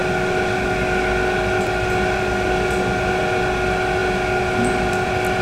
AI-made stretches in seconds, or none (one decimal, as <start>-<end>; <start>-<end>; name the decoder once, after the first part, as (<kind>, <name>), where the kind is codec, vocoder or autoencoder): none